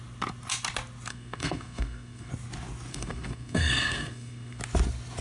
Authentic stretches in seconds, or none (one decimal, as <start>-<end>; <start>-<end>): 0.0-1.1; 2.3-2.9; 4.6-5.2